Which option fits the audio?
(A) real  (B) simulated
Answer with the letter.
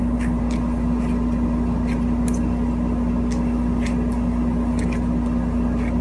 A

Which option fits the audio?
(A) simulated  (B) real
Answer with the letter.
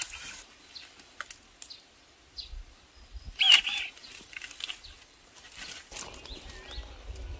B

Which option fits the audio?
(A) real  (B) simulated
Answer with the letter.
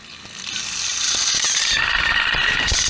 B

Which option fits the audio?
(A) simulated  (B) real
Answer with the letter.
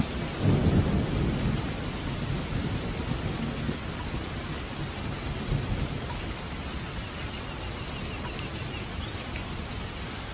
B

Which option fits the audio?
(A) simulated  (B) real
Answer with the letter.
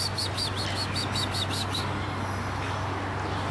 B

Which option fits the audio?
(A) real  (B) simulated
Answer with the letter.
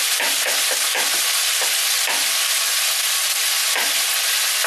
A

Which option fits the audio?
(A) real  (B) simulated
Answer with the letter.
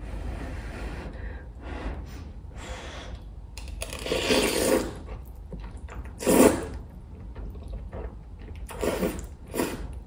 B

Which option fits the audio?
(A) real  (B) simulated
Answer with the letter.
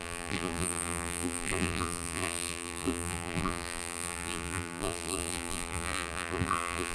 B